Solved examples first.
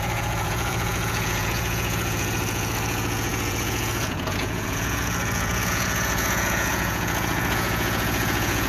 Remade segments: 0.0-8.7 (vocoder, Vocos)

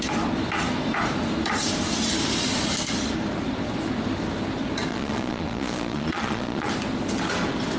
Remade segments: 4.9-6.7 (vocoder, Vocos)

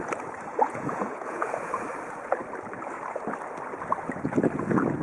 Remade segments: 0.5-1.7 (vocoder, Vocos)

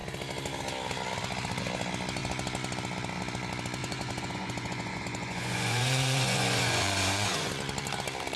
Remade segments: 3.8-7.5 (vocoder, Vocos)

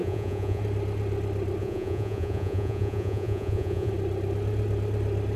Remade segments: 0.0-0.6 (vocoder, Vocos); 1.6-3.9

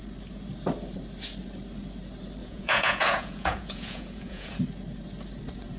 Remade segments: 2.4-4.6 (vocoder, Vocos)